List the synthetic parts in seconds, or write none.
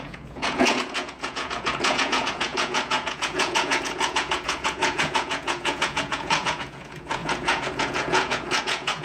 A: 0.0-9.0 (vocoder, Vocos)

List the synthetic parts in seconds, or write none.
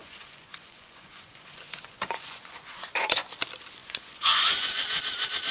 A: 0.0-3.3 (vocoder, Vocos); 3.8-5.0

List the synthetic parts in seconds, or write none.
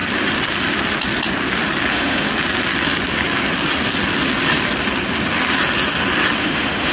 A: 1.9-2.3 (autoencoder, DAC-VAE); 6.4-6.9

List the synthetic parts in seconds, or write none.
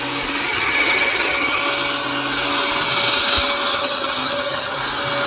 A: 0.5-1.6 (vocoder, HiFi-GAN); 3.7-4.8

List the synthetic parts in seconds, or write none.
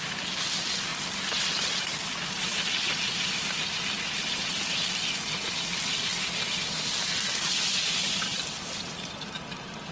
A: none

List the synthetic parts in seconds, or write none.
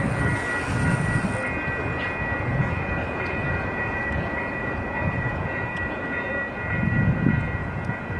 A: 2.5-6.3 (vocoder, Vocos); 7.6-8.2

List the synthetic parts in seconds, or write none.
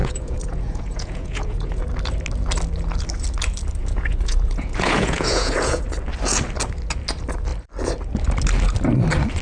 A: 0.0-1.9 (vocoder, Vocos); 3.8-5.8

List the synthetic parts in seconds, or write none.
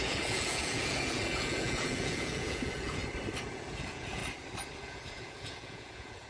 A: 0.0-3.0 (vocoder, Vocos); 3.5-4.2; 4.8-6.3